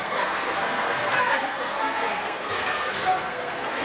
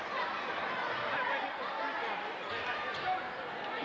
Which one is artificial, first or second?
first